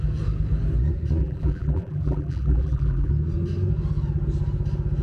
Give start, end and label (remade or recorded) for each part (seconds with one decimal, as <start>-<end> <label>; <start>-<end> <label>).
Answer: 0.0-1.2 recorded; 1.2-3.1 remade; 3.1-5.0 recorded